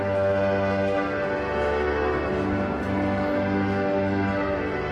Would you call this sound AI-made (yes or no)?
no